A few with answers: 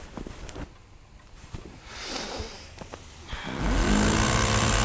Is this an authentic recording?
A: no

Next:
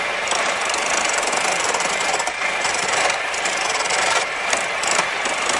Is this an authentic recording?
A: no